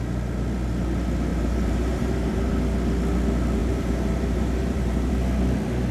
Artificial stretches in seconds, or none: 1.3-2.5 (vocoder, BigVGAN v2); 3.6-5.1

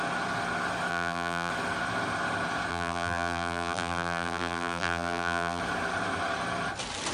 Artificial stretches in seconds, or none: 0.9-1.5 (vocoder, BigVGAN v2); 2.7-5.6

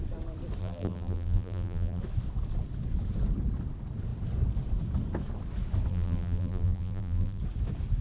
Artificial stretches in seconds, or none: 0.6-2.0 (vocoder, BigVGAN v2); 5.9-7.4

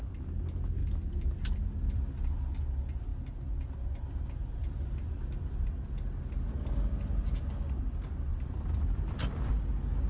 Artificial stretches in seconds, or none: 0.8-2.4 (vocoder, BigVGAN v2); 3.1-5.7; 8.3-9.5

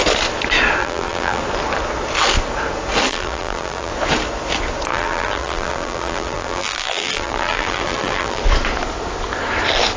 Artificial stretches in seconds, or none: 0.8-1.4 (vocoder, BigVGAN v2); 3.1-3.9; 4.9-8.4

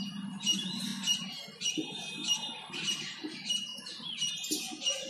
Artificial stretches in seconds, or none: 0.0-0.9 (vocoder, BigVGAN v2); 1.7-2.2; 2.9-3.7; 4.3-5.1